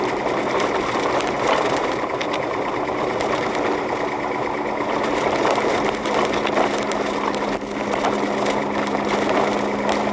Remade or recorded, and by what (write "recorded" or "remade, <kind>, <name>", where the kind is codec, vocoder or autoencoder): recorded